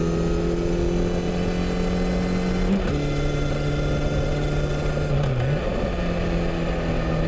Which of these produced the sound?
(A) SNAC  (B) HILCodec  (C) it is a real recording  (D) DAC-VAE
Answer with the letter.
C